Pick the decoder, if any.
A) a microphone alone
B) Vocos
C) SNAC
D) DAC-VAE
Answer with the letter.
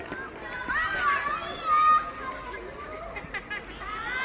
A